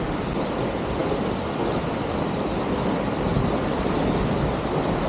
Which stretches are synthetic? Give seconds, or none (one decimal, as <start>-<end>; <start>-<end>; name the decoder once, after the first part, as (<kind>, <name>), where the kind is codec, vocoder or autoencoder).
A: none